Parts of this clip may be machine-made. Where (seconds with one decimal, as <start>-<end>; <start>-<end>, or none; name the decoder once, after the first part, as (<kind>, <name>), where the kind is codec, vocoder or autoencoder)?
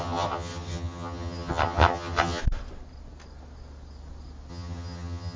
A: 0.0-2.4 (vocoder, HiFi-GAN); 4.5-5.4